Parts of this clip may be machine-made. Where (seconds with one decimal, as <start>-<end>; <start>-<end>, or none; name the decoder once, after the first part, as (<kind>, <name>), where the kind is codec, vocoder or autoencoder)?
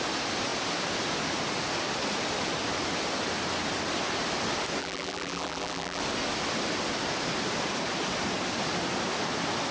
4.8-6.0 (vocoder, BigVGAN v2)